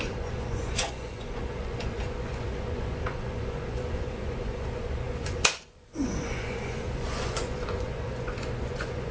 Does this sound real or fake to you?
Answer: fake